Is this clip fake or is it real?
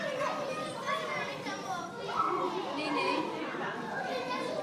fake